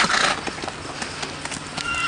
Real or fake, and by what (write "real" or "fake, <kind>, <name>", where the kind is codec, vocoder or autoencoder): real